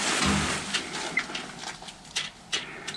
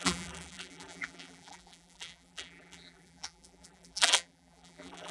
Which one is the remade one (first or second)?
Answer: second